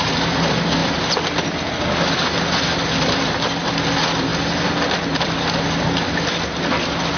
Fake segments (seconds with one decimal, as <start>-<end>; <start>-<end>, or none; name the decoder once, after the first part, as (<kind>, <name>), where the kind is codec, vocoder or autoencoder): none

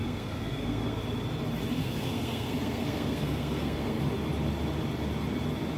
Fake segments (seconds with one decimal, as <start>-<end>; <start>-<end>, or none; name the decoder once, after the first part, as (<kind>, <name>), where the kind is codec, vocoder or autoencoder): 0.0-1.0 (codec, SNAC); 1.8-4.0

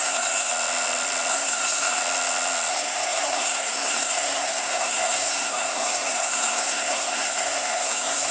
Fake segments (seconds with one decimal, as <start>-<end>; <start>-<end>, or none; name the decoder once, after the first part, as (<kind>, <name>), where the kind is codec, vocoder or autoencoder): 0.0-0.5 (codec, SNAC); 1.3-2.0; 2.7-8.3

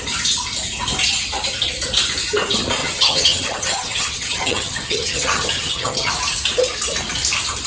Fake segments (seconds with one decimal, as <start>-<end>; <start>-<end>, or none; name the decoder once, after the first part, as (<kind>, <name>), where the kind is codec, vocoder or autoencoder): 2.8-6.1 (vocoder, HiFi-GAN)